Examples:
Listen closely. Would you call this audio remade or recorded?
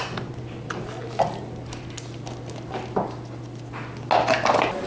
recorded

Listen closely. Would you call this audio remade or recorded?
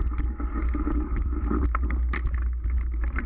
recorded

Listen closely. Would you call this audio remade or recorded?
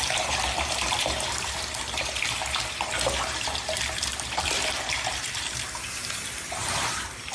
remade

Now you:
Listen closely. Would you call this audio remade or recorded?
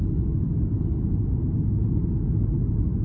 recorded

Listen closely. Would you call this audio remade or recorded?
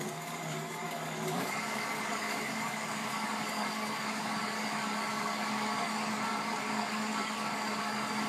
remade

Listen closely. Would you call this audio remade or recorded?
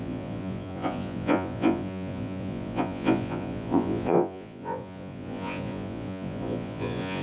remade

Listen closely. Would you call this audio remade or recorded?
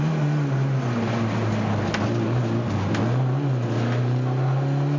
recorded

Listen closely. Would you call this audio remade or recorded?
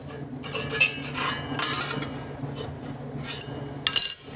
recorded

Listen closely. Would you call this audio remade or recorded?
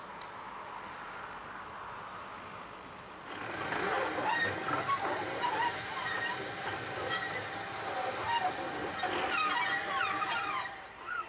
recorded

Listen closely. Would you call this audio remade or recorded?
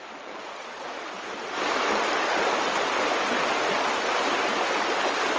recorded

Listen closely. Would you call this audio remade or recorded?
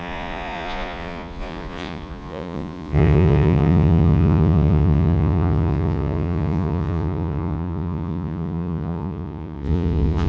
remade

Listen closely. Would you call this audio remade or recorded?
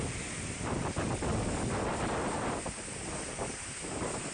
recorded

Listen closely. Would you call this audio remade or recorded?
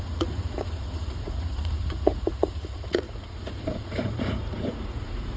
remade